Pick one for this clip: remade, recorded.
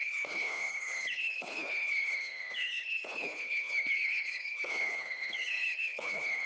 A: remade